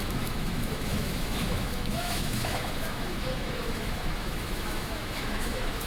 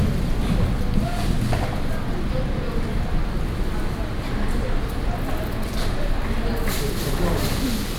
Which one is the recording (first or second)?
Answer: second